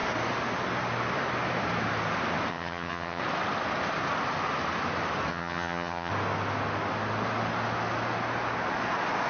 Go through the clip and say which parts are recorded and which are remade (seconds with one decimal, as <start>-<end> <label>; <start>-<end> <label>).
0.0-2.5 recorded; 2.5-3.2 remade; 3.2-5.3 recorded; 5.3-6.1 remade; 6.1-9.3 recorded